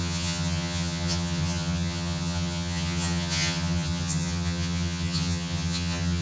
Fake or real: fake